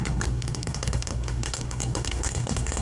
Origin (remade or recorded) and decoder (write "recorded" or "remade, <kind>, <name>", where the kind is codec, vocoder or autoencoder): remade, codec, SNAC